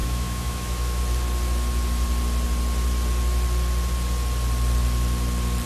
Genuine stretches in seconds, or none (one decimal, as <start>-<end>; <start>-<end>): 1.0-5.6